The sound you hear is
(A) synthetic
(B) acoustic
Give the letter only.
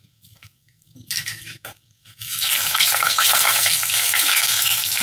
A